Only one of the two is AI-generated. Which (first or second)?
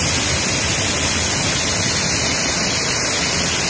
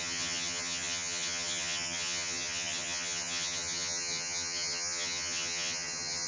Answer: second